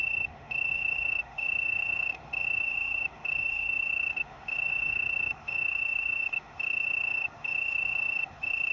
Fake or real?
fake